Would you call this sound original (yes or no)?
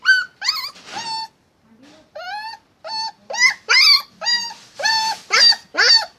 yes